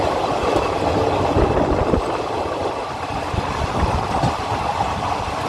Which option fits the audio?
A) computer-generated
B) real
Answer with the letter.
B